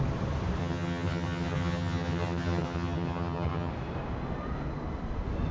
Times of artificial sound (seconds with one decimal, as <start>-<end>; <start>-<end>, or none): 0.6-3.7